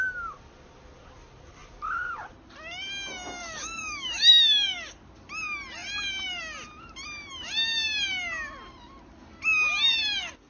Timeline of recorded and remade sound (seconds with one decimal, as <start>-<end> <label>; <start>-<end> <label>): 0.0-3.4 recorded; 3.4-4.3 remade; 4.3-10.5 recorded